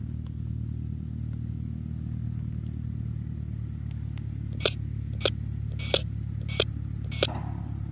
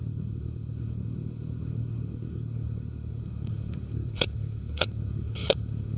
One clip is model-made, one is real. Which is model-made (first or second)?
second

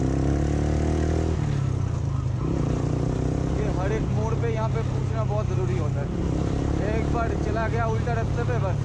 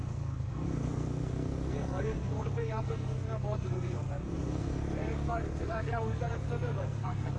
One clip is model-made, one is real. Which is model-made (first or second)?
second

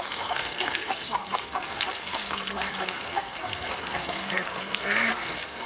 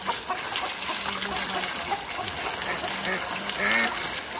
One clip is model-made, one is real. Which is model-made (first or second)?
first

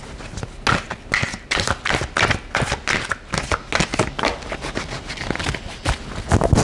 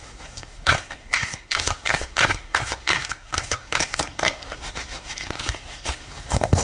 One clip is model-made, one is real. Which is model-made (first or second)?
second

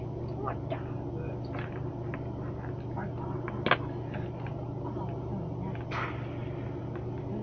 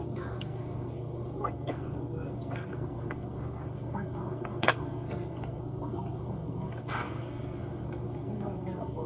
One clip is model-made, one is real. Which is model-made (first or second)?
second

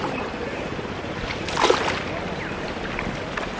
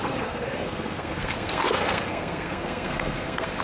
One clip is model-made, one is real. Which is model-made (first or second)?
second